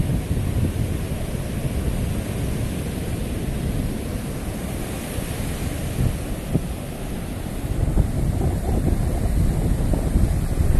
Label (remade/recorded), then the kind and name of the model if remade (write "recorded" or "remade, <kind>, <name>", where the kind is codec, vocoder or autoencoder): recorded